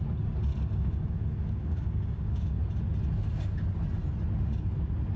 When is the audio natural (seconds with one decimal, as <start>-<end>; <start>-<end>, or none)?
0.0-0.5; 2.6-5.2